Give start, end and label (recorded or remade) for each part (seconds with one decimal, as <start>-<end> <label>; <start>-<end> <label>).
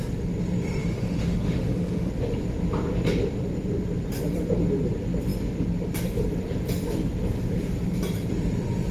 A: 0.0-0.8 recorded; 0.8-2.1 remade; 2.1-8.9 recorded